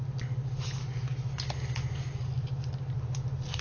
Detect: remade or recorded recorded